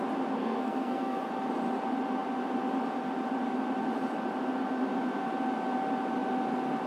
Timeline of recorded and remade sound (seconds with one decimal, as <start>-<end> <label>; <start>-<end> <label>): 0.0-0.4 recorded; 0.4-1.2 remade; 1.2-6.9 recorded